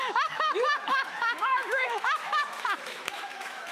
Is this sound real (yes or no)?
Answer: no